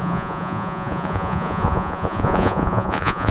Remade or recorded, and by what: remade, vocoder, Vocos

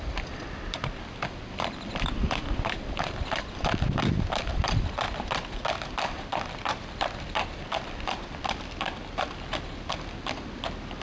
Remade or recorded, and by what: remade, vocoder, BigVGAN v2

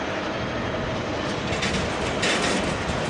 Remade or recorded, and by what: recorded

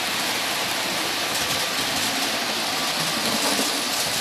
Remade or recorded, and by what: recorded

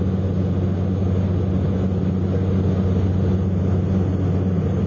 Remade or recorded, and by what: recorded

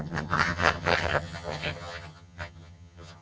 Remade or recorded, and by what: remade, vocoder, HiFi-GAN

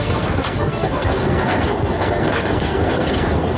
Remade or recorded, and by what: remade, codec, SNAC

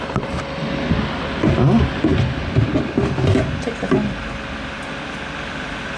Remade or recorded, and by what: recorded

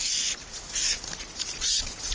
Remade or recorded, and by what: remade, vocoder, Vocos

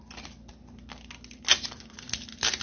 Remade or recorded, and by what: recorded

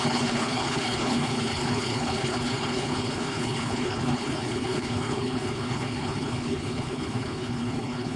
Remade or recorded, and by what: remade, codec, HILCodec